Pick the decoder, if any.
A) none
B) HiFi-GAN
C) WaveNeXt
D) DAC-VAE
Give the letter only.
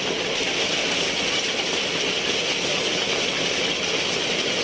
A